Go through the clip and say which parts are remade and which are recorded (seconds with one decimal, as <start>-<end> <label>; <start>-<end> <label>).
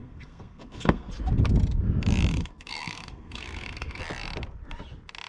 0.0-1.1 remade; 1.1-2.3 recorded; 2.3-4.0 remade; 4.0-5.3 recorded